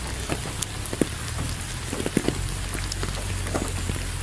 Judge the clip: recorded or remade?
recorded